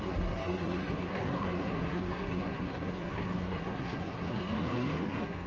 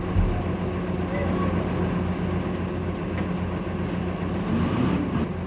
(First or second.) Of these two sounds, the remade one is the first